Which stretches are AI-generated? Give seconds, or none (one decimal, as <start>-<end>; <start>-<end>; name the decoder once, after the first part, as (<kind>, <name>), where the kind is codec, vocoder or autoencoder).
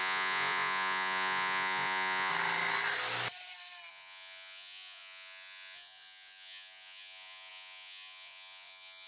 0.0-2.3 (vocoder, Vocos); 3.9-9.1